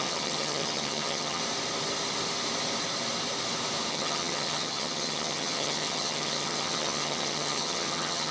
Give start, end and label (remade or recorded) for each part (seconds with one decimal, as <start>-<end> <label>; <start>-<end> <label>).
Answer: 0.0-1.4 remade; 1.4-3.9 recorded; 3.9-8.3 remade